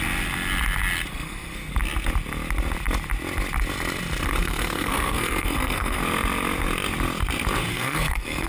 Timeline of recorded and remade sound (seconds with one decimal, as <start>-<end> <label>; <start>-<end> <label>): 0.0-1.1 recorded; 1.1-1.7 remade; 1.7-4.4 recorded; 4.4-6.0 remade; 6.0-7.7 recorded; 7.7-8.5 remade